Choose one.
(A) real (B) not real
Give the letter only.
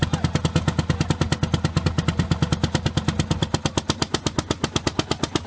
A